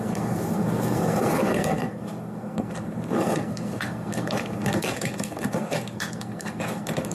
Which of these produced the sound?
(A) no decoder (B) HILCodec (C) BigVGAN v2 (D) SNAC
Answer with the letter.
D